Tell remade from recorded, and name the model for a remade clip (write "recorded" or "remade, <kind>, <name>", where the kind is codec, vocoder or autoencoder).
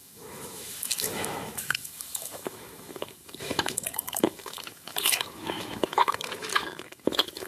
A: remade, autoencoder, DAC-VAE